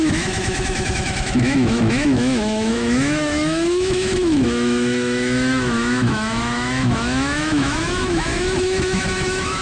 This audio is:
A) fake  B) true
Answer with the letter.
A